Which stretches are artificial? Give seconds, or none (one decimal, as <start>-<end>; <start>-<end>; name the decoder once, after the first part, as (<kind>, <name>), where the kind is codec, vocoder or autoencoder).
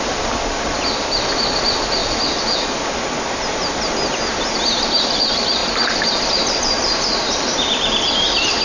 0.0-2.0 (vocoder, BigVGAN v2); 4.3-8.6